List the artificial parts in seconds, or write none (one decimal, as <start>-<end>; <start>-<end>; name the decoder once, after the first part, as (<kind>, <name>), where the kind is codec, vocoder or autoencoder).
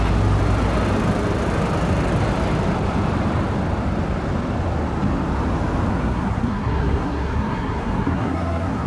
5.9-8.9 (codec, SNAC)